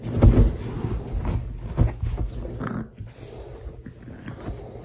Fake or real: real